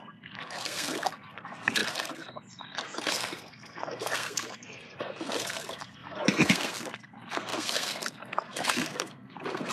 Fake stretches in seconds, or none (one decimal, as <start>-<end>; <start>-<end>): 0.0-9.7